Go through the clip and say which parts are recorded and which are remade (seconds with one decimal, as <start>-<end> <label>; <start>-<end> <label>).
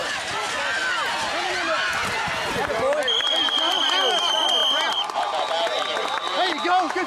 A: 0.0-7.1 recorded